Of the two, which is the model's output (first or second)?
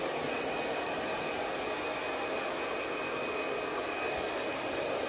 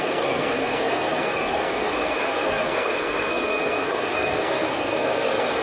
second